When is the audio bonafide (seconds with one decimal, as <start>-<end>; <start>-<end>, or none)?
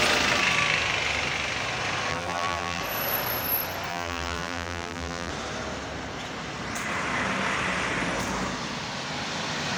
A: 0.0-2.1; 2.8-3.9; 5.3-9.8